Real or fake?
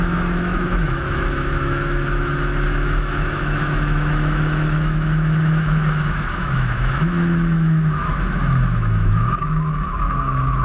fake